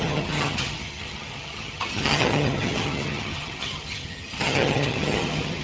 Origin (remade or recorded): remade